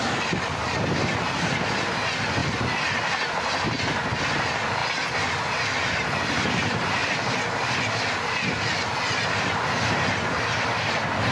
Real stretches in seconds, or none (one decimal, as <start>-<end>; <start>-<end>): 0.0-11.3